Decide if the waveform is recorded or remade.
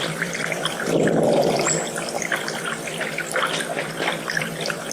remade